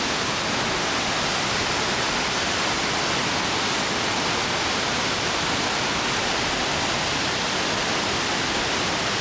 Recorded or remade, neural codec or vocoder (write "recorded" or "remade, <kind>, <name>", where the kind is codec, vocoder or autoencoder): recorded